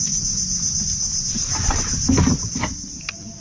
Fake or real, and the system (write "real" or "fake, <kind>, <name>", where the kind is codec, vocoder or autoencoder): real